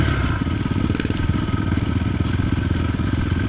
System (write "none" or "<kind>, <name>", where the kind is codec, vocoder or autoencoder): none